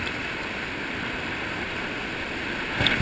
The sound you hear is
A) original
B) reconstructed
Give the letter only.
A